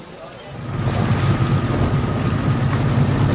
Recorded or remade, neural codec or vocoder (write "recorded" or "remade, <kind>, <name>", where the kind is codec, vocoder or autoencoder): recorded